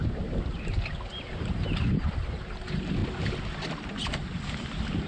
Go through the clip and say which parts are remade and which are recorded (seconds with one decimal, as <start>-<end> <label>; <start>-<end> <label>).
0.0-5.1 recorded